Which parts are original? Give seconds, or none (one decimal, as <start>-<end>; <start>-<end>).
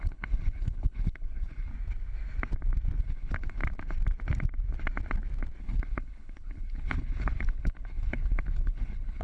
1.7-3.0; 3.6-5.6